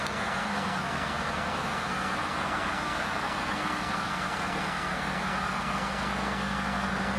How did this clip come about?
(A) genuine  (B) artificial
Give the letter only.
B